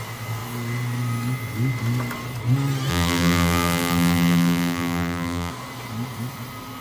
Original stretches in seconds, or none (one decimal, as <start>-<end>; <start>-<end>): 0.0-2.9; 5.5-6.8